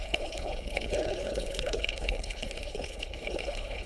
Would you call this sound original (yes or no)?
no